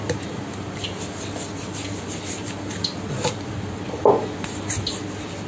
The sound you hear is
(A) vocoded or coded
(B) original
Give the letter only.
B